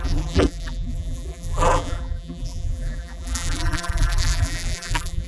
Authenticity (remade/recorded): remade